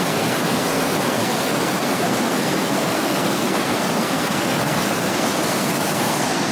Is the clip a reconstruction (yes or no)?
yes